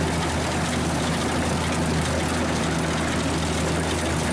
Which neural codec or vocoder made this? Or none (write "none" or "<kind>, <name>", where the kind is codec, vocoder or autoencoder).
none